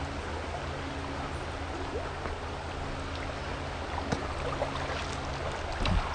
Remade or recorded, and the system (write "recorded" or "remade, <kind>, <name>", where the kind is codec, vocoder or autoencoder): recorded